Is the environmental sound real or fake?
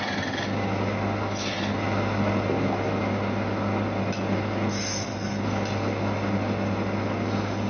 real